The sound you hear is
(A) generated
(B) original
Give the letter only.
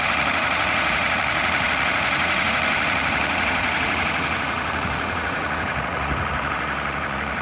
A